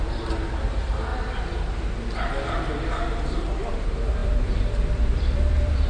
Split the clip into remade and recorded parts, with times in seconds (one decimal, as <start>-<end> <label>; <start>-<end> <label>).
0.0-1.1 remade; 1.1-3.7 recorded; 3.7-5.9 remade